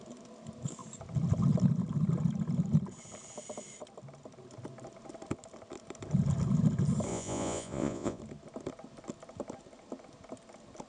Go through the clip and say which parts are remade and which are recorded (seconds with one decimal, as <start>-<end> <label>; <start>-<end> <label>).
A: 0.0-7.1 recorded; 7.1-8.2 remade; 8.2-10.9 recorded